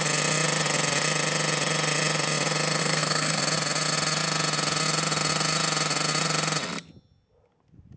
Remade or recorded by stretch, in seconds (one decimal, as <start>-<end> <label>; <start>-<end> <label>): 0.0-2.8 recorded; 2.8-3.4 remade; 3.4-8.0 recorded